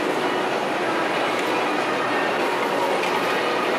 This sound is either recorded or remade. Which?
recorded